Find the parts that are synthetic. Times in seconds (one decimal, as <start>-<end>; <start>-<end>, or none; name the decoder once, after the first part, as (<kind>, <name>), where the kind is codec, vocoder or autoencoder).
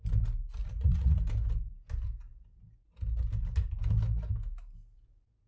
0.6-1.2 (vocoder, Vocos)